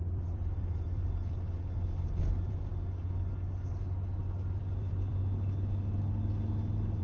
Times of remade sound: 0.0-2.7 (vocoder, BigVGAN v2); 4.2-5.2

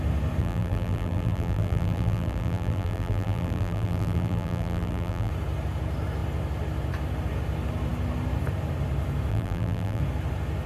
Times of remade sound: 0.4-5.3 (vocoder, BigVGAN v2); 9.3-10.0

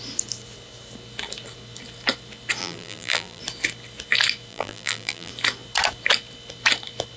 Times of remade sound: 2.6-3.4 (vocoder, BigVGAN v2); 4.5-5.3